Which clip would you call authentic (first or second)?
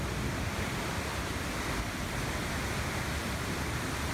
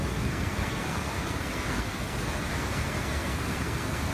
first